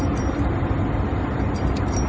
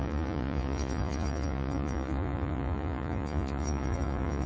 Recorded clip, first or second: first